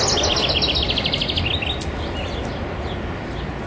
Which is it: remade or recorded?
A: recorded